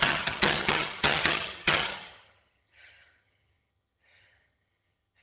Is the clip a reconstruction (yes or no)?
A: yes